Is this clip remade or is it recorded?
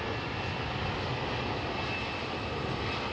recorded